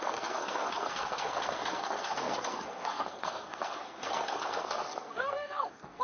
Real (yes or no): no